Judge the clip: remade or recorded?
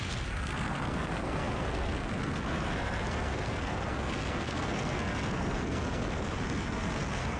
remade